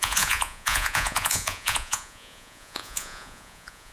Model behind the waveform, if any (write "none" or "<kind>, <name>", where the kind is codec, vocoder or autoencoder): vocoder, Vocos